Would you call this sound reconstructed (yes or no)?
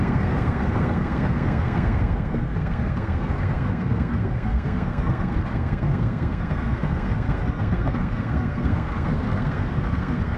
yes